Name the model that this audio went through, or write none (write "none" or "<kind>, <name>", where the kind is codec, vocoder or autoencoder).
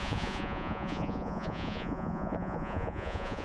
vocoder, Vocos